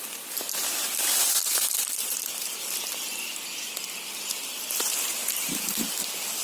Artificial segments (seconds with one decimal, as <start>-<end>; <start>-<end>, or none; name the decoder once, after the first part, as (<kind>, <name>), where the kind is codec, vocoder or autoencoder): 0.0-3.8 (vocoder, BigVGAN v2); 4.5-5.5